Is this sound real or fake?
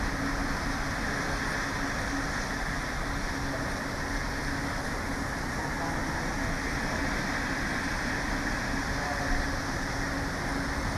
real